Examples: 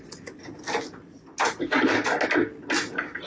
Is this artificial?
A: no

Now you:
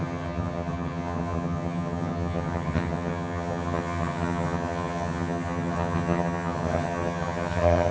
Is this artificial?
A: yes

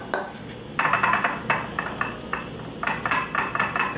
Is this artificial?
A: no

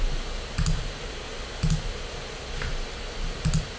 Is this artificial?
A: no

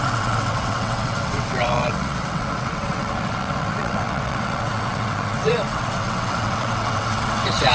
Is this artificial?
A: yes